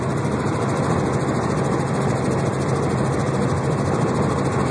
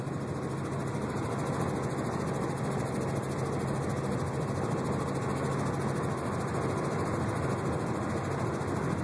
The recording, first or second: second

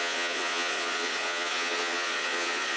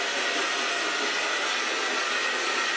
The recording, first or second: second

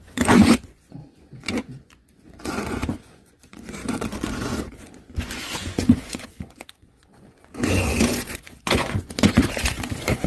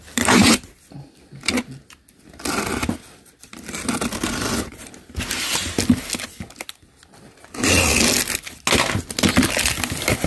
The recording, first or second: second